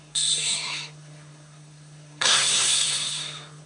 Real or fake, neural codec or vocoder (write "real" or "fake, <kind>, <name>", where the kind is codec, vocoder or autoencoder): fake, codec, SNAC